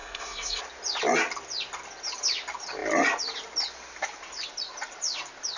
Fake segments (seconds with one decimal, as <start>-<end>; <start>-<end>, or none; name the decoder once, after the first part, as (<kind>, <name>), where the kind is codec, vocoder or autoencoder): 0.0-0.6 (codec, SNAC)